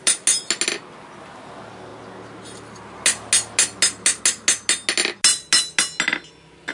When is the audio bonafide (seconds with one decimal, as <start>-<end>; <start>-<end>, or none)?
0.0-6.7